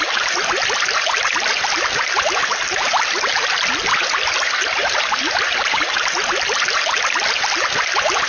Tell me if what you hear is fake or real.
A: real